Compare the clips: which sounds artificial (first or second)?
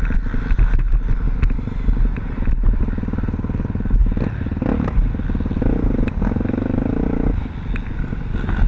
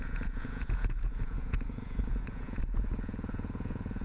second